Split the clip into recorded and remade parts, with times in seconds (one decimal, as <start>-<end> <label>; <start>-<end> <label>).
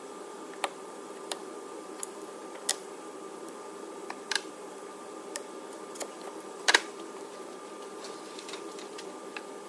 0.0-9.7 remade